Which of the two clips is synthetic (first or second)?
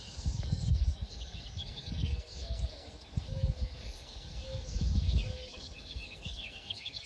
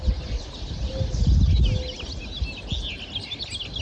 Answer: first